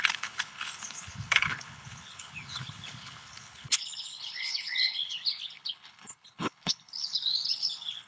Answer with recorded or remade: remade